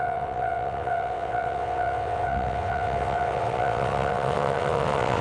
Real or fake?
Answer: fake